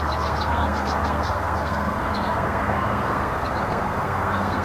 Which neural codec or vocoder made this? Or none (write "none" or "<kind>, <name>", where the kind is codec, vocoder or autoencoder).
codec, SNAC